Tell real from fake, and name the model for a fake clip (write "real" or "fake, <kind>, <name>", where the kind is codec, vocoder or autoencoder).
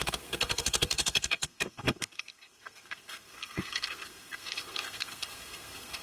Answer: fake, codec, SNAC